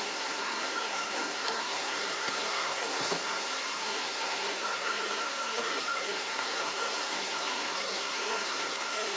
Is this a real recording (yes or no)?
no